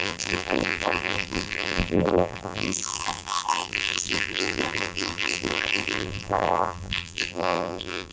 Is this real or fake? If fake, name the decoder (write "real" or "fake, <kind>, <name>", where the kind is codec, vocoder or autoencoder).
fake, vocoder, BigVGAN v2